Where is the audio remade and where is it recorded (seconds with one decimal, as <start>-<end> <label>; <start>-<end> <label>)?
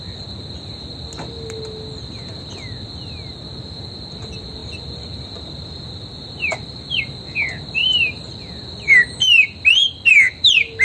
0.0-4.6 recorded; 4.6-7.0 remade; 7.0-10.8 recorded